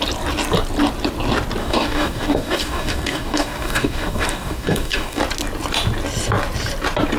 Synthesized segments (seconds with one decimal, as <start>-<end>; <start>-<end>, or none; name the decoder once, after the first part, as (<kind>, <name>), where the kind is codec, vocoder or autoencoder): 1.6-5.2 (codec, DAC)